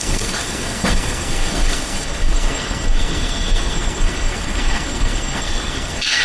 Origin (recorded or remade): remade